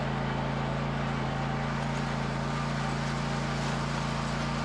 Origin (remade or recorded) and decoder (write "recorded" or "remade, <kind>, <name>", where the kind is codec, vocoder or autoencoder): recorded